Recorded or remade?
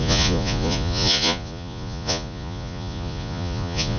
remade